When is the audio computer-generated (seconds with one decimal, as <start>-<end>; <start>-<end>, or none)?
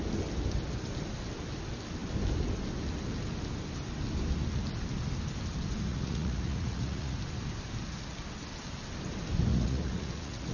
5.9-7.2; 9.5-10.5